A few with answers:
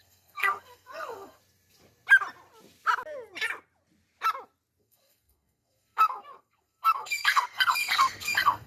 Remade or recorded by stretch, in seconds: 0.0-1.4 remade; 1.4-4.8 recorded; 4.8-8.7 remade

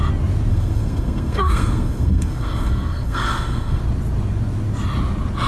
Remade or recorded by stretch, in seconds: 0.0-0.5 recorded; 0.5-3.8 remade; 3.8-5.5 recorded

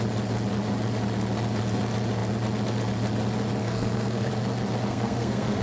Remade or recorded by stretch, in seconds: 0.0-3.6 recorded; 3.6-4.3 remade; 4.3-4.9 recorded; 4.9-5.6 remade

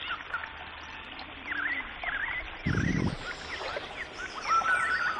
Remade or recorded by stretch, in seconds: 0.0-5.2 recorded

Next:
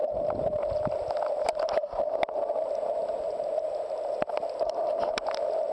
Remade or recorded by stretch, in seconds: 0.0-5.7 recorded